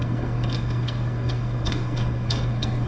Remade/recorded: remade